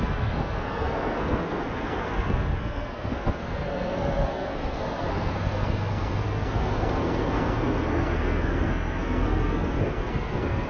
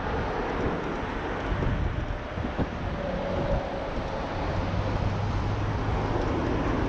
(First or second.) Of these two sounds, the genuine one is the second